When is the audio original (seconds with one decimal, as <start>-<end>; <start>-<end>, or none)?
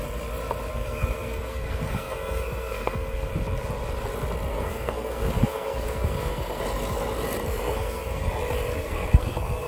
0.0-0.7; 3.3-4.5; 6.6-7.4; 8.3-8.8